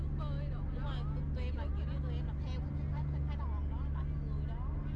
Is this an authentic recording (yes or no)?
yes